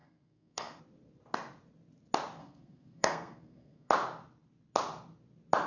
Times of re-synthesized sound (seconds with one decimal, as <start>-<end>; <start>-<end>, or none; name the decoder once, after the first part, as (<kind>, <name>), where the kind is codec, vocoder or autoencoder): 0.0-0.8 (codec, SNAC); 2.4-3.9